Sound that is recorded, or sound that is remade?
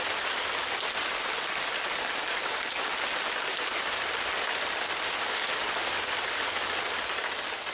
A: recorded